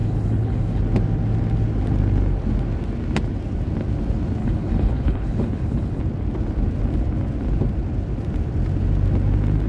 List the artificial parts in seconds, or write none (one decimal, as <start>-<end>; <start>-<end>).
0.0-0.8; 4.4-6.0